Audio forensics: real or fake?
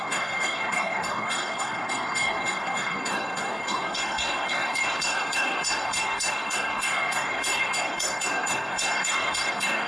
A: fake